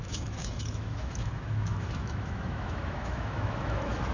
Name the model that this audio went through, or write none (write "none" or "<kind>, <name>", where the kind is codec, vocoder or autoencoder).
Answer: autoencoder, DAC-VAE